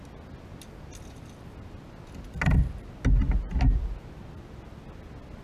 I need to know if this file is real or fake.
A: real